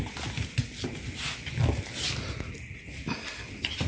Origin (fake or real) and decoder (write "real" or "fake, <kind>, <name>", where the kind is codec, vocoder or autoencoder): real